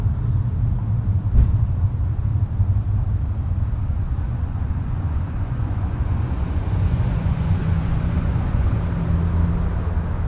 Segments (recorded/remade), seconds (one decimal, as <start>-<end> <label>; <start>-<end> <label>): 0.0-3.8 recorded; 3.8-8.8 remade; 8.8-10.3 recorded